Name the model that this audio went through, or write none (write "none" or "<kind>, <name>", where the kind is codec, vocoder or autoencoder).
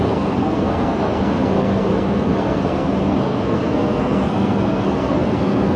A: codec, SNAC